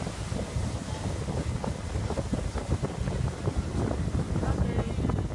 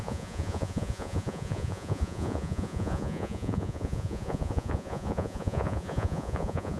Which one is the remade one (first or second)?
second